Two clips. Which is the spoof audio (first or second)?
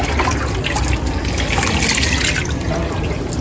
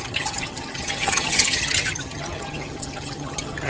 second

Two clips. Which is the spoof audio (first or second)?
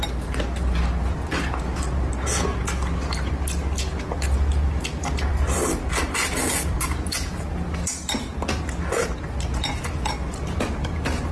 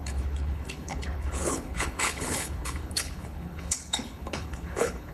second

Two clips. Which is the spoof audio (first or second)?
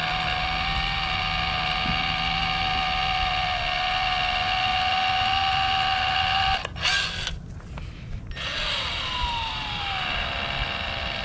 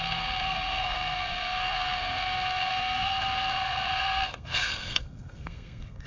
second